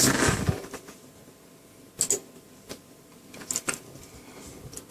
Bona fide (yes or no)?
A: yes